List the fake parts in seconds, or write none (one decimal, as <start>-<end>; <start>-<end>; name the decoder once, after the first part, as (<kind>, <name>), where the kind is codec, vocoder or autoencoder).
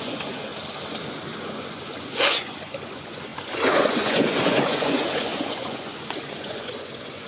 0.0-0.5 (vocoder, Vocos); 1.4-7.3